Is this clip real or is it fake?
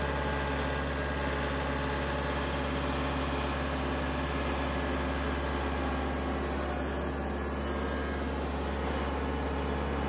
real